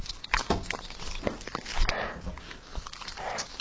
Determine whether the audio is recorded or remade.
recorded